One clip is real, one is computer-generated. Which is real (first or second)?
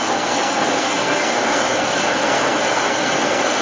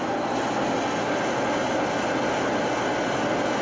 second